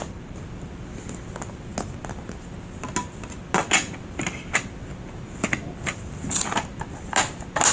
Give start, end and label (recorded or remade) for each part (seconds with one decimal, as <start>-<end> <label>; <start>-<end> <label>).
0.0-7.7 recorded